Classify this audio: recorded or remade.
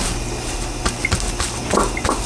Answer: recorded